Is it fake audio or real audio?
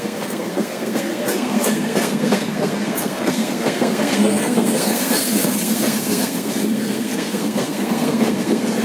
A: fake